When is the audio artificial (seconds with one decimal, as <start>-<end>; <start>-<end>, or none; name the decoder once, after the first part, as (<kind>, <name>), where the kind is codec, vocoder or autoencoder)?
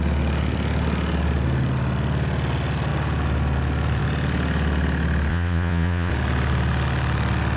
5.3-6.1 (vocoder, Vocos)